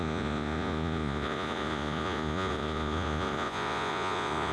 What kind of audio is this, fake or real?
fake